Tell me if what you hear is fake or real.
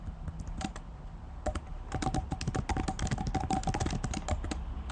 real